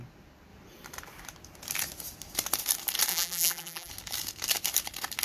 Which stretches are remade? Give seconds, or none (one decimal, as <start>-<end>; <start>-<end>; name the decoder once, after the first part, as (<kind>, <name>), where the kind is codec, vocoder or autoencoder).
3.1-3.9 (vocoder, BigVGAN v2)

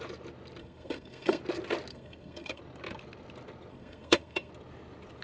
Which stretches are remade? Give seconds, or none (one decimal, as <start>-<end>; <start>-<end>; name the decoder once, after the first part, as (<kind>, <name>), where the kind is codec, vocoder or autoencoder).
0.6-1.4 (codec, SNAC); 1.9-2.6; 3.7-4.5

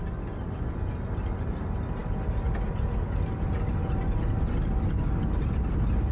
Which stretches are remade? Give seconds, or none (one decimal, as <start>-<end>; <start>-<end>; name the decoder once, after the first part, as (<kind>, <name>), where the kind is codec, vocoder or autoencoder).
none